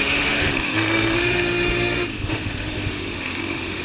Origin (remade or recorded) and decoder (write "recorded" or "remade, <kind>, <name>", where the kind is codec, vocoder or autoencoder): remade, autoencoder, DAC-VAE